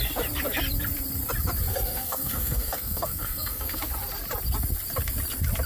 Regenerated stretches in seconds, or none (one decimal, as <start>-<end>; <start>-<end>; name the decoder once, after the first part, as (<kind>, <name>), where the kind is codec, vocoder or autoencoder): 1.7-3.8 (codec, SNAC)